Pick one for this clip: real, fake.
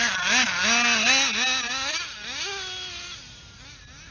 real